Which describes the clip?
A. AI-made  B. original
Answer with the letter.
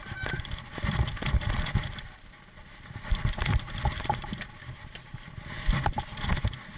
B